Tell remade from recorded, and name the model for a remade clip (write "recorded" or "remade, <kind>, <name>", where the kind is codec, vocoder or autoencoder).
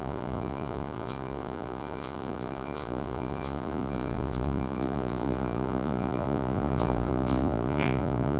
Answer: remade, vocoder, Vocos